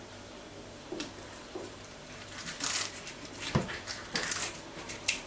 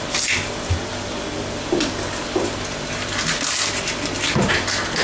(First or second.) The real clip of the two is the second